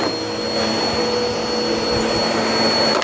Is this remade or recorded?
recorded